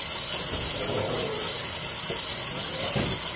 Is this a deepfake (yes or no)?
no